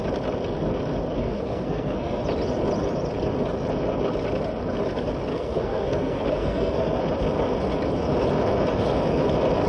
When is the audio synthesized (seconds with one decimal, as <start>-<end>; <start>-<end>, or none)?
1.2-2.2; 5.3-7.0